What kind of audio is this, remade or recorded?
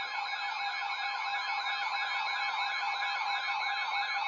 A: recorded